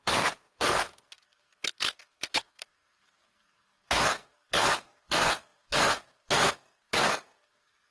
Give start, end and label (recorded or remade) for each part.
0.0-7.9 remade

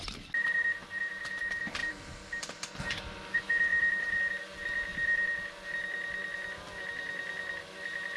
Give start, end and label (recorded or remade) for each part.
0.0-8.2 recorded

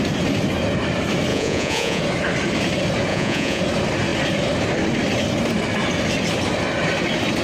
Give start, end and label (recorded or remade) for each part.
0.0-1.3 recorded; 1.3-2.0 remade; 2.0-3.1 recorded; 3.1-3.6 remade; 3.6-7.4 recorded

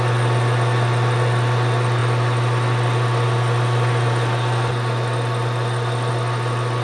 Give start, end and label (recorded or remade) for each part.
0.0-6.8 recorded

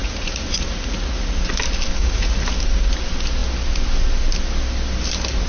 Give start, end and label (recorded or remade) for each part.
0.0-1.5 remade; 1.5-2.0 recorded; 2.0-2.5 remade; 2.5-5.5 recorded

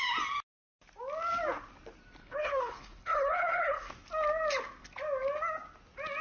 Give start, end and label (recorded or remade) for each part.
0.0-2.2 recorded; 2.2-3.9 remade; 3.9-6.2 recorded

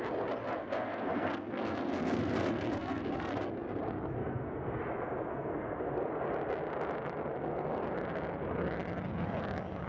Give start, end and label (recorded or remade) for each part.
0.0-0.6 recorded; 0.6-3.5 remade; 3.5-4.2 recorded; 4.2-4.8 remade; 4.8-5.3 recorded; 5.3-5.8 remade; 5.8-9.9 recorded